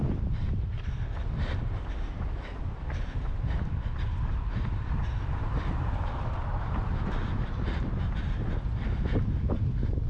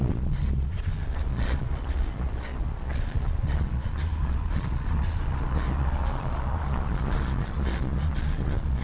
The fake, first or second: second